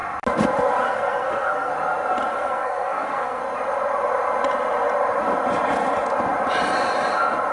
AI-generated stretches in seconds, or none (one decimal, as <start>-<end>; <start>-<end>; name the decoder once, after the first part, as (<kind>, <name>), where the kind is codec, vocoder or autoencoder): 0.9-1.7 (codec, SNAC); 2.3-3.4